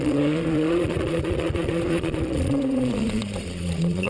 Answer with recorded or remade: remade